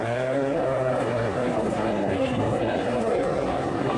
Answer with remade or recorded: remade